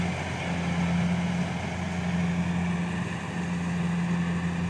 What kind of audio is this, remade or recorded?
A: recorded